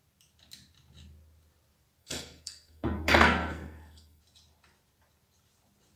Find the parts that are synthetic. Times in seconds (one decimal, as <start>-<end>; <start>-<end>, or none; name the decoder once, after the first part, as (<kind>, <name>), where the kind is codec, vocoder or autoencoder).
2.0-4.2 (codec, SNAC)